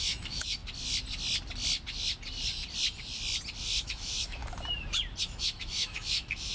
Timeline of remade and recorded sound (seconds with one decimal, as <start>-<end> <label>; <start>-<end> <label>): 0.0-0.6 remade; 0.6-3.6 recorded; 3.6-4.4 remade; 4.4-5.2 recorded; 5.2-6.5 remade